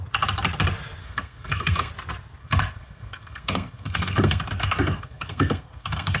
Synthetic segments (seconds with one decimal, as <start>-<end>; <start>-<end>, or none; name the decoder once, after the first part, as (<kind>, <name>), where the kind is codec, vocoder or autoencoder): 1.0-1.9 (codec, SNAC); 2.4-6.2